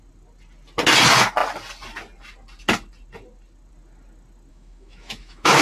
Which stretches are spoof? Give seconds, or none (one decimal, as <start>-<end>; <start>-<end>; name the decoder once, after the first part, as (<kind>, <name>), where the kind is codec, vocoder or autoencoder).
4.5-5.6 (autoencoder, DAC-VAE)